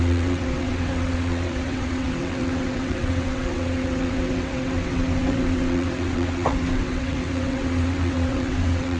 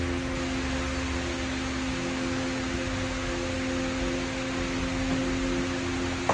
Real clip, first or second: second